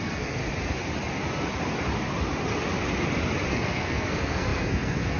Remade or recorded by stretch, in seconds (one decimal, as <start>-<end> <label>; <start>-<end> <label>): 0.0-0.4 remade; 0.4-3.5 recorded; 3.5-5.2 remade